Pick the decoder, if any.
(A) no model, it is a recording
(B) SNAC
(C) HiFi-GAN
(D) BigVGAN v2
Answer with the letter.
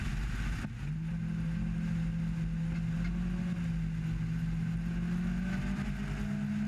A